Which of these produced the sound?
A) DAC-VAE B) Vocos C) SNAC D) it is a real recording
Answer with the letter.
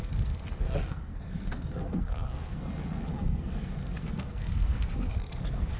C